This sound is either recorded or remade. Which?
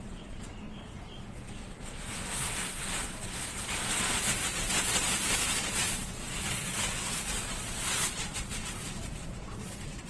remade